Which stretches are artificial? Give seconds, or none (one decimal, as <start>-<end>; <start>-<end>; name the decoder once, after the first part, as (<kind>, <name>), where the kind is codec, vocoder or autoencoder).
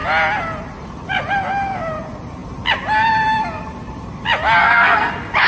4.6-5.1 (codec, SNAC)